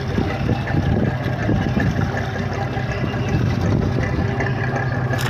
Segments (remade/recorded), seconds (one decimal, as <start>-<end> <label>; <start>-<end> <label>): 0.0-5.3 recorded